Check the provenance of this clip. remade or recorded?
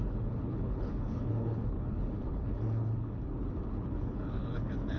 remade